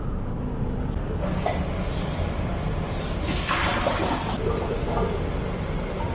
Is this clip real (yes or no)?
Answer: yes